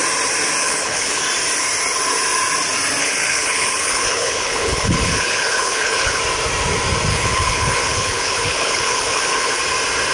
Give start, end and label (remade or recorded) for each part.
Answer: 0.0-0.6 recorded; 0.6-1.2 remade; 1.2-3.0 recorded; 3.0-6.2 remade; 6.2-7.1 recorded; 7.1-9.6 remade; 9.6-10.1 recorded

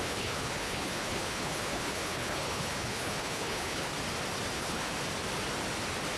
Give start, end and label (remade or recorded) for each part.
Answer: 0.0-3.9 remade; 3.9-4.5 recorded; 4.5-4.9 remade; 4.9-6.2 recorded

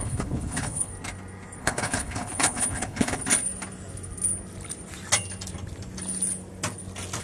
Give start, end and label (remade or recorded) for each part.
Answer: 0.0-0.9 remade; 0.9-1.6 recorded; 1.6-3.2 remade; 3.2-7.2 recorded

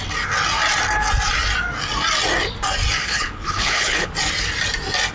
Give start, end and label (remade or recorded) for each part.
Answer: 0.0-3.0 recorded; 3.0-4.1 remade; 4.1-5.1 recorded

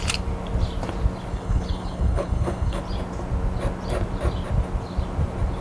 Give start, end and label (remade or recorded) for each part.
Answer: 0.0-1.3 recorded; 1.3-2.8 remade; 2.8-5.6 recorded

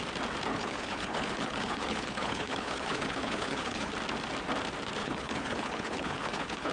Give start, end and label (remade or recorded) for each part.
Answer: 0.0-0.5 recorded; 0.5-3.9 remade; 3.9-5.0 recorded; 5.0-6.7 remade

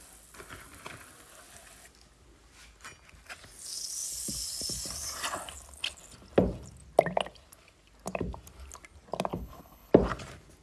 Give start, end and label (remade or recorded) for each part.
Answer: 0.0-9.3 recorded; 9.3-9.9 remade; 9.9-10.6 recorded